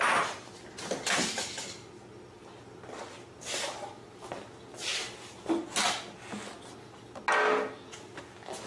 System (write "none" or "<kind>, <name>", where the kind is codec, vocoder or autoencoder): none